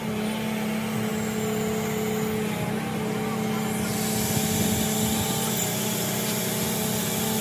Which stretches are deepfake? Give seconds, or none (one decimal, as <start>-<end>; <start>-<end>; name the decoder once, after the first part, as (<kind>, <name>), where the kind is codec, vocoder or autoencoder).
none